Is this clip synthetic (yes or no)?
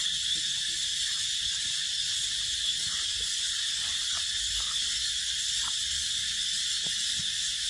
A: no